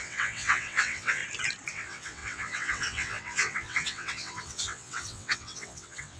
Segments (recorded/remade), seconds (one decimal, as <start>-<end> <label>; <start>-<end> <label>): 0.0-1.2 remade; 1.2-1.7 recorded; 1.7-6.2 remade